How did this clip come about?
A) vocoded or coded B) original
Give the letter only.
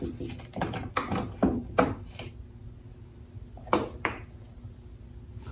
B